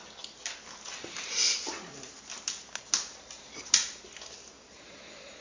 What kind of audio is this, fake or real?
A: real